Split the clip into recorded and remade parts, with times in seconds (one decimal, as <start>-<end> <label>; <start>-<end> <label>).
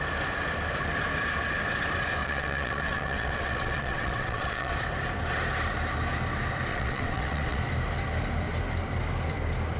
0.0-2.2 recorded; 2.2-4.7 remade; 4.7-6.7 recorded; 6.7-7.6 remade; 7.6-9.8 recorded